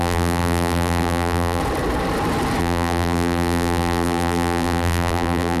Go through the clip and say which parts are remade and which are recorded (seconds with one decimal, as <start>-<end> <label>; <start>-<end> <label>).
0.0-1.6 remade; 1.6-2.6 recorded; 2.6-5.6 remade